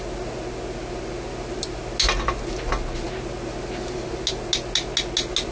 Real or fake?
real